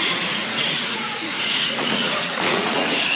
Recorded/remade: remade